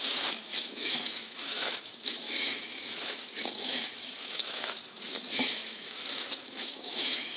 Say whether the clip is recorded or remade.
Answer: remade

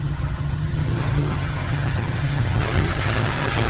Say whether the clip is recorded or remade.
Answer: remade